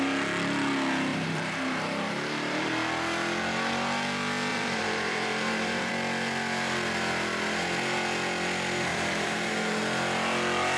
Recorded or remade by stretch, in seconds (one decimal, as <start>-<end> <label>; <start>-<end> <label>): 0.0-1.1 recorded; 1.1-2.7 remade; 2.7-4.5 recorded; 4.5-5.9 remade; 5.9-8.9 recorded; 8.9-9.8 remade; 9.8-10.8 recorded